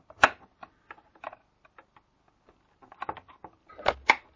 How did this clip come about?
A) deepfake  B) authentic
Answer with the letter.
B